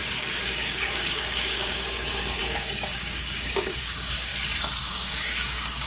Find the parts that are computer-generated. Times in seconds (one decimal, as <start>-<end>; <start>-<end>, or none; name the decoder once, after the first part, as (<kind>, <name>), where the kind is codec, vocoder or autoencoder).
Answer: 0.0-4.3 (codec, DAC); 4.8-5.9